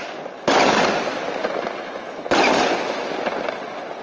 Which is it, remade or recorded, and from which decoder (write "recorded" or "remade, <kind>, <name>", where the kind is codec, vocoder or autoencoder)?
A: recorded